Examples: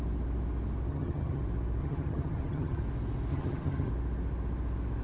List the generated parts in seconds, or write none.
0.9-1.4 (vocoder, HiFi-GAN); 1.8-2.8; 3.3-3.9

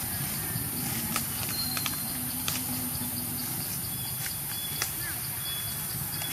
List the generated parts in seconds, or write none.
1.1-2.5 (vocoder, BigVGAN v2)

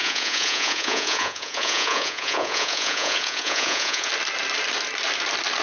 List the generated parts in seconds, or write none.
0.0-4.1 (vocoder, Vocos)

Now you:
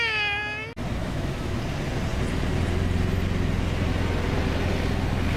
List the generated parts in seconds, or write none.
1.0-1.6 (autoencoder, DAC-VAE)

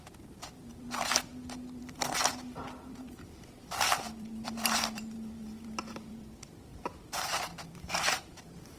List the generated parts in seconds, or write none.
0.0-1.3 (vocoder, BigVGAN v2); 1.8-8.8

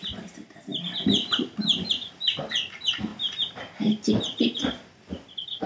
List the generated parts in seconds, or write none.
0.7-2.1 (vocoder, BigVGAN v2)

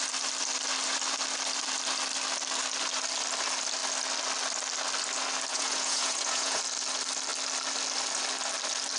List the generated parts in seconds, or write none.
5.5-6.6 (vocoder, Vocos)

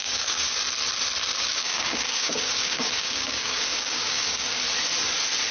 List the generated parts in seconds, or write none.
0.0-0.6 (codec, DAC); 1.3-4.6